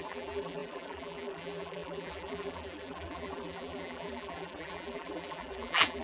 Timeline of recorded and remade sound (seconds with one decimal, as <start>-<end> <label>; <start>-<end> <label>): 0.0-6.0 remade